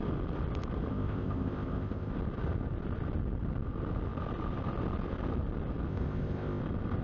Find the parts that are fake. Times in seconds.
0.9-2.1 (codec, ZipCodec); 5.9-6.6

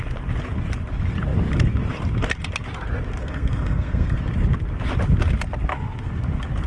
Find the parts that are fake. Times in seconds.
3.2-4.2 (codec, SNAC)

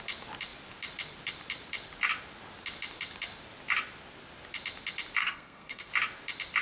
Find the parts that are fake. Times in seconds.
5.2-5.9 (codec, SNAC)

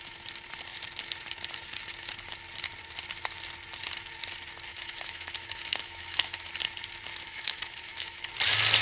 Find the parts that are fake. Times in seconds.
4.7-6.5 (autoencoder, DAC-VAE); 7.1-8.3

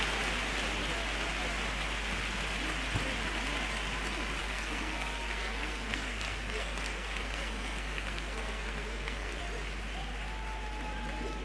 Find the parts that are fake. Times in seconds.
4.4-9.4 (codec, SNAC)

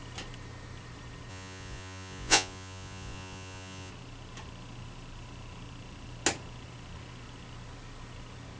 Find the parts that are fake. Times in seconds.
1.3-3.9 (vocoder, Vocos)

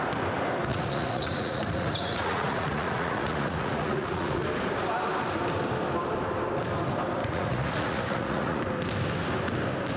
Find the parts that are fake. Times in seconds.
0.7-4.4 (vocoder, Vocos); 7.2-8.6